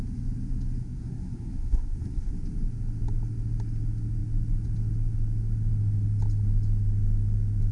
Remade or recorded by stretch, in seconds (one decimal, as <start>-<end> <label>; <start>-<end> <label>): 0.0-0.8 recorded; 0.8-2.3 remade; 2.3-7.7 recorded